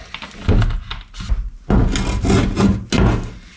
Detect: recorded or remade recorded